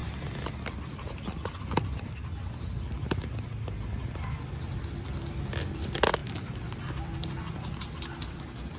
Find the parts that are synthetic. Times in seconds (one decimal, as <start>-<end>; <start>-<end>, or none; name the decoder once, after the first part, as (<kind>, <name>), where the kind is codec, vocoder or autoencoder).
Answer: none